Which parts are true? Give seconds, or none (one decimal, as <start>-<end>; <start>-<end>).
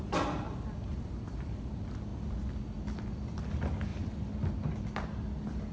0.0-0.9; 1.7-3.9; 4.5-5.7